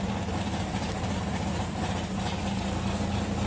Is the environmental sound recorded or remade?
recorded